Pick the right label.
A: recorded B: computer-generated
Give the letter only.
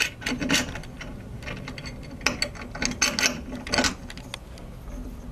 A